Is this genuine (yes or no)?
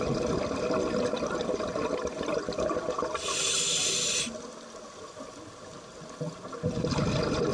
yes